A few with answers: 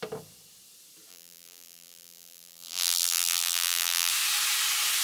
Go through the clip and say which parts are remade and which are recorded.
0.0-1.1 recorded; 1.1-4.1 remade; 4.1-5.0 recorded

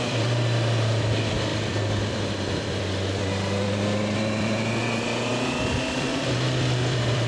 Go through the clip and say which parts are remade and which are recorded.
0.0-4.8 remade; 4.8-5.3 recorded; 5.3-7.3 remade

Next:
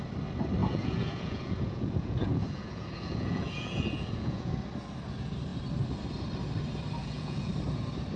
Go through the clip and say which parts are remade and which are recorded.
0.0-0.6 recorded; 0.6-4.5 remade; 4.5-7.0 recorded; 7.0-7.5 remade; 7.5-8.2 recorded

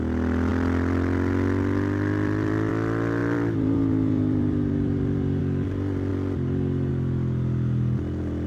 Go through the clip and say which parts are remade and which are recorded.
0.0-0.5 recorded; 0.5-2.7 remade; 2.7-3.2 recorded; 3.2-5.4 remade; 5.4-8.5 recorded